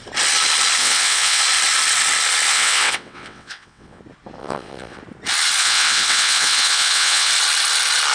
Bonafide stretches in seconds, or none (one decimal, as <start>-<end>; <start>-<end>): 0.0-0.8; 1.4-2.5; 4.0-4.4; 5.0-5.6; 7.3-8.1